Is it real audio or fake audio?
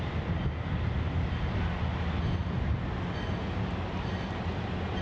real